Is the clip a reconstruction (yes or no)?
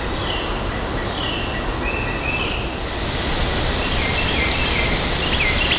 no